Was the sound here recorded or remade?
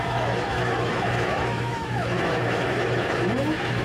remade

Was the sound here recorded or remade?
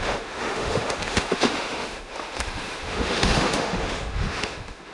remade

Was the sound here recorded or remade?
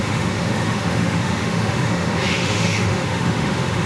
remade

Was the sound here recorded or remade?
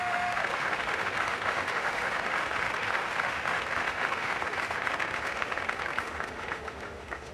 remade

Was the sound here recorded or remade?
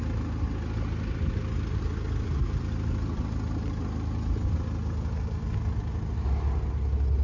recorded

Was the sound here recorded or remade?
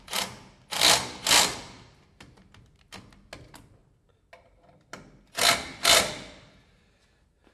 recorded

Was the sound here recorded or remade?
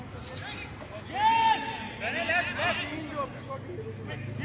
recorded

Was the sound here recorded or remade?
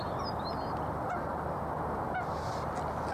recorded